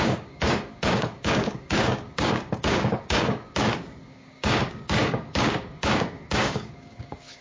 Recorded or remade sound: remade